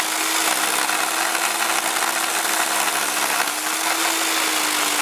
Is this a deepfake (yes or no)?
no